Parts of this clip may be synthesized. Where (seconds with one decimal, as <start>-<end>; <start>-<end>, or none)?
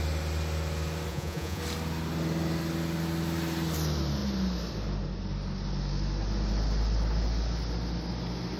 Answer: 1.1-1.6